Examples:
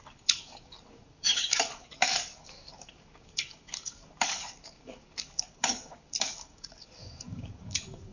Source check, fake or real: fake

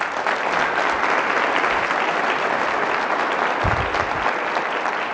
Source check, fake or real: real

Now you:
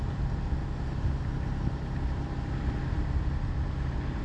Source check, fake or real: real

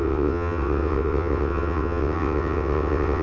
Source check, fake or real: fake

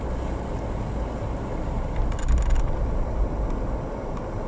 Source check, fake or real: real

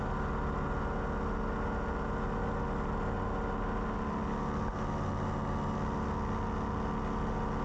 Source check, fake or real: real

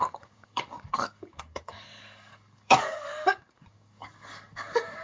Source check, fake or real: fake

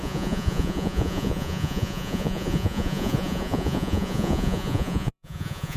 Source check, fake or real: fake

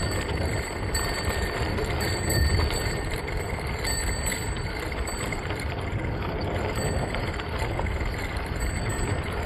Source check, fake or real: fake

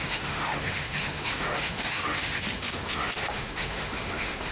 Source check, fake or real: fake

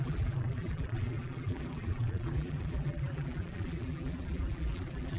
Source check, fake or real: fake